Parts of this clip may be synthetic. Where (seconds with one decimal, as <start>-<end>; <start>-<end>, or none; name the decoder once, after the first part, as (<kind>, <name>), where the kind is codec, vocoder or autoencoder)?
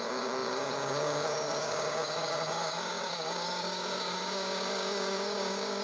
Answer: 0.0-5.8 (codec, DAC)